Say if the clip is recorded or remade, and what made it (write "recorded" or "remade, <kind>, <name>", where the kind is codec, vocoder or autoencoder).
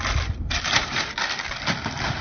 recorded